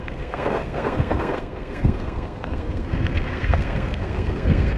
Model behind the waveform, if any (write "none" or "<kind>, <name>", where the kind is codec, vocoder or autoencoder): codec, SNAC